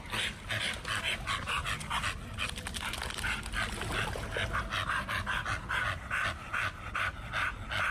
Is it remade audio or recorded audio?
recorded